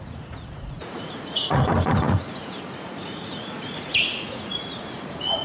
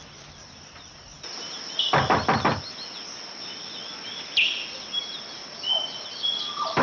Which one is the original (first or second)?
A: second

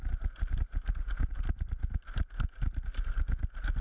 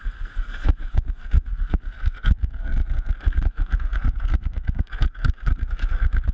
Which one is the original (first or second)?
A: first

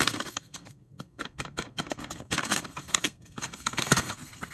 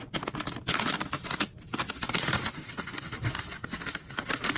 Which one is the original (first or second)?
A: second